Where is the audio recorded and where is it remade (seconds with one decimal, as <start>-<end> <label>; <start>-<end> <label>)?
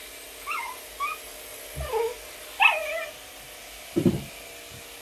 0.0-5.0 recorded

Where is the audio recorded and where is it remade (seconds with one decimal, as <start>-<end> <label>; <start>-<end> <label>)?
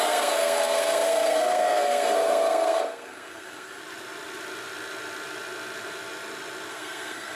0.0-3.8 remade; 3.8-6.7 recorded; 6.7-7.4 remade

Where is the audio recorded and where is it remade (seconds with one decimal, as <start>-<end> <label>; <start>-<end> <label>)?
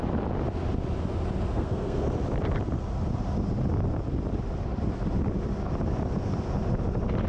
0.0-1.5 recorded; 1.5-2.1 remade; 2.1-7.3 recorded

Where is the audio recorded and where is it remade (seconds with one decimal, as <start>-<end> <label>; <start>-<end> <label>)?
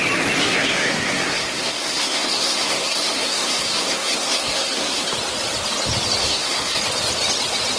0.0-0.4 recorded; 0.4-5.1 remade; 5.1-6.2 recorded; 6.2-6.8 remade; 6.8-7.8 recorded